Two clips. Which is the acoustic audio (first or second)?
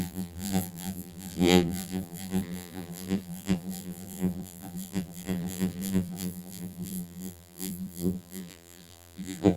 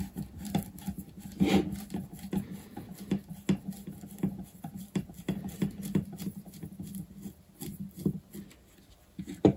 second